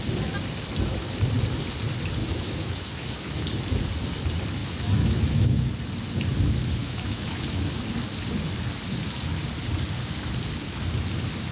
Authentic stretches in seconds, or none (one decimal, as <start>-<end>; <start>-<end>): 0.0-2.2; 3.4-4.6; 5.7-6.8; 7.8-11.5